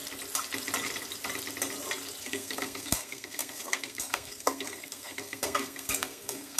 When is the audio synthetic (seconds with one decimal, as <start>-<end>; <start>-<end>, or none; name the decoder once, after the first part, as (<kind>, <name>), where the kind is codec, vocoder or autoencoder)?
2.2-6.6 (codec, SNAC)